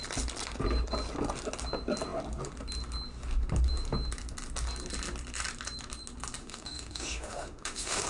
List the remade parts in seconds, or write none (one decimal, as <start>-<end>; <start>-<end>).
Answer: 6.4-8.1